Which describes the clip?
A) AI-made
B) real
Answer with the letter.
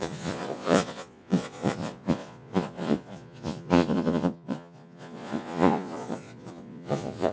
A